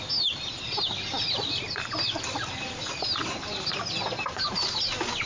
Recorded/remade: recorded